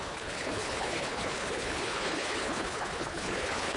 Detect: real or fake fake